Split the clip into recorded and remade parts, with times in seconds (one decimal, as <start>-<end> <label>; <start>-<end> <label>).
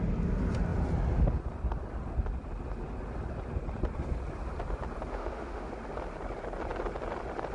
0.0-5.1 recorded; 5.1-5.7 remade; 5.7-7.5 recorded